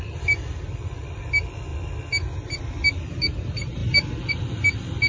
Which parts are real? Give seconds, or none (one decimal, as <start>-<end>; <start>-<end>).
0.0-5.1